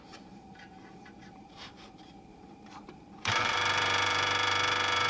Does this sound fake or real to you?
fake